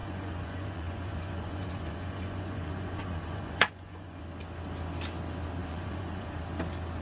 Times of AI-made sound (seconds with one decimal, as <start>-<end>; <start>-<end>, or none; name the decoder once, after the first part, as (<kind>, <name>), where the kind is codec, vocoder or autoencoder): 0.0-4.2 (vocoder, Vocos); 5.6-6.4